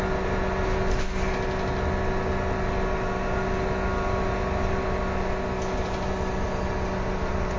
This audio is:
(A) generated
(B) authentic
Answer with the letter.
B